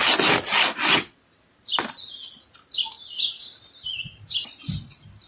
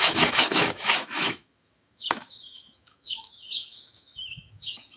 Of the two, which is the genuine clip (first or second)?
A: first